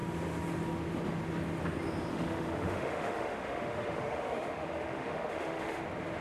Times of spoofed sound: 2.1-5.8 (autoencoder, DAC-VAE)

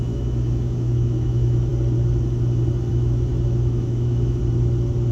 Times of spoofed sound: 0.0-1.7 (autoencoder, DAC-VAE); 2.9-4.4

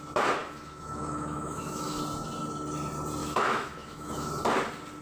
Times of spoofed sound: 0.4-2.0 (autoencoder, DAC-VAE); 3.2-4.3